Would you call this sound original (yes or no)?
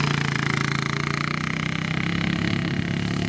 yes